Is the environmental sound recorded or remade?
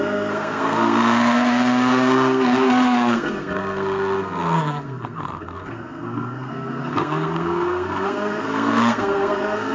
remade